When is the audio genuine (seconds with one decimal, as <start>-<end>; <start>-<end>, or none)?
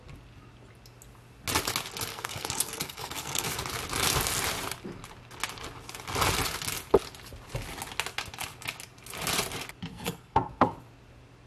0.0-2.1; 3.6-9.9; 10.7-11.5